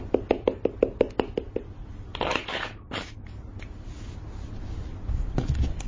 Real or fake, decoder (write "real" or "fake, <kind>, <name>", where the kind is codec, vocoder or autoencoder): real